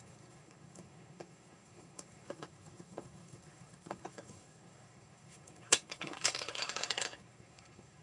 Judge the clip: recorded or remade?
remade